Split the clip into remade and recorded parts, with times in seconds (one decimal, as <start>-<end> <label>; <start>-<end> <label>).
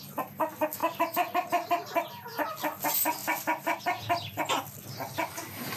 0.0-5.8 recorded